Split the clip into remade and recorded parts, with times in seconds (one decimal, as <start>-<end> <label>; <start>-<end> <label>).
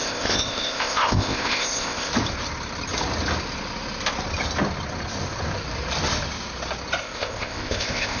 0.0-2.1 remade; 2.1-7.0 recorded; 7.0-8.2 remade